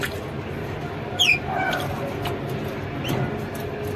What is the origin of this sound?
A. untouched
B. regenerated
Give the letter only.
A